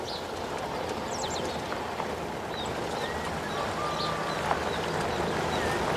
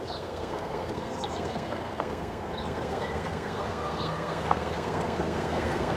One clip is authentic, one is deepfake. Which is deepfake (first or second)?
second